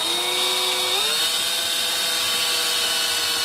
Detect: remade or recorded recorded